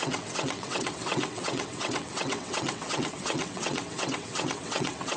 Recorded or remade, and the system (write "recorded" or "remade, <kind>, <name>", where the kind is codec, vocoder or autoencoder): remade, vocoder, WaveNeXt